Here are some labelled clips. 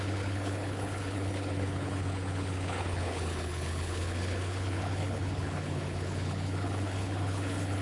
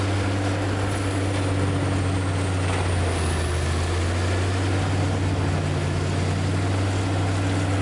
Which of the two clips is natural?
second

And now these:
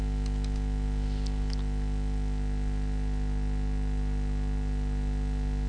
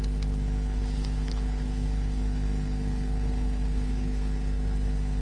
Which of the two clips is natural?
first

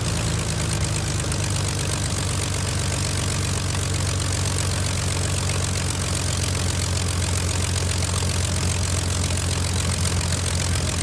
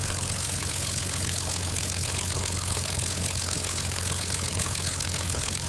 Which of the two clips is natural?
first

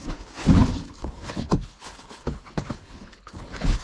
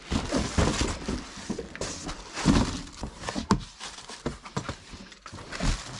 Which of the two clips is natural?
second